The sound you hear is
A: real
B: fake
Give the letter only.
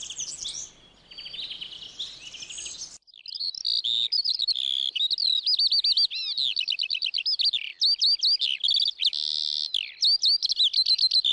A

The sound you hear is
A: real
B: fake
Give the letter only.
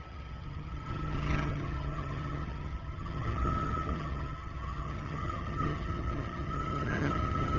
B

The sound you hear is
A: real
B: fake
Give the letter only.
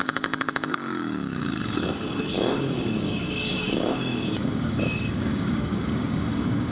B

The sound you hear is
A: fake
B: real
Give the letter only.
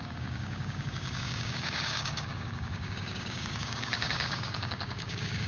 A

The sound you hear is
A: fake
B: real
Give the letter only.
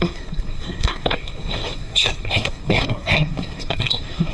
A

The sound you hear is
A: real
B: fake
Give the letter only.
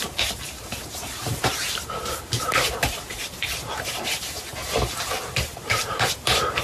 B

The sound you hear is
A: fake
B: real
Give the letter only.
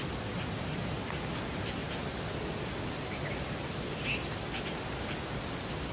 B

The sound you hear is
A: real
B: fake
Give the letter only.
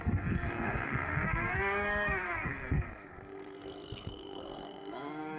B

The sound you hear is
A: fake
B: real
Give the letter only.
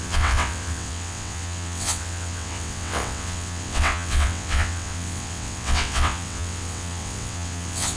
A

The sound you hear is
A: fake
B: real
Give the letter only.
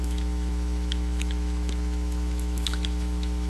A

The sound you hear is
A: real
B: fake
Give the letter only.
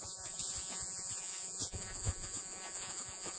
B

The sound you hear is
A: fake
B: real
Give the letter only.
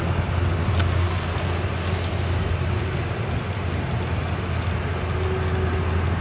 B